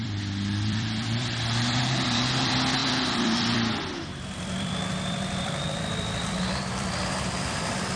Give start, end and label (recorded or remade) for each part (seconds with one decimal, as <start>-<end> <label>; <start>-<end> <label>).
0.0-8.0 remade